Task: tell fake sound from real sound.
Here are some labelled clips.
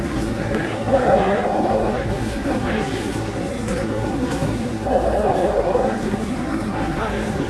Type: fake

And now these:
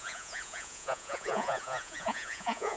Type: fake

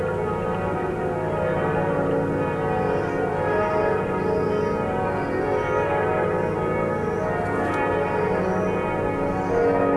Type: real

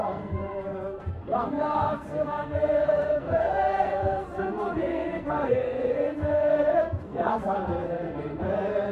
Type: fake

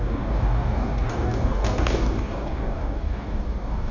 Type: fake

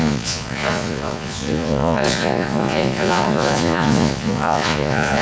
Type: fake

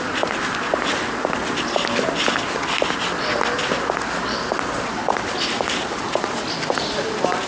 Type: real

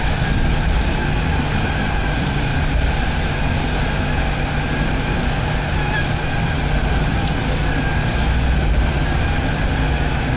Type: real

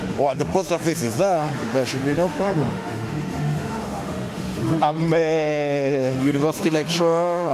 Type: fake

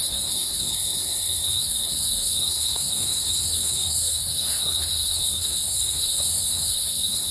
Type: fake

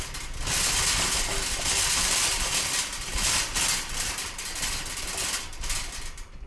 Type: real